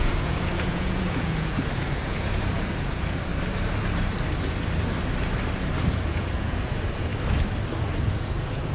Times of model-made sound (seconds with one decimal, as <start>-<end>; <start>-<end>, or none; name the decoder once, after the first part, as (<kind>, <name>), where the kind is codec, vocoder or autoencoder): 0.0-3.3 (vocoder, Vocos); 5.9-7.1; 7.7-8.7